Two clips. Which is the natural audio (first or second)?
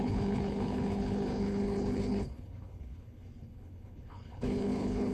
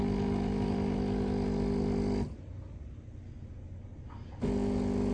second